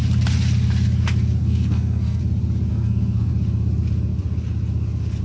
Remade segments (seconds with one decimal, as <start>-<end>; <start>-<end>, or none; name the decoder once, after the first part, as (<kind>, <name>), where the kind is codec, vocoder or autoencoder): 1.4-2.2 (codec, SNAC); 2.7-3.3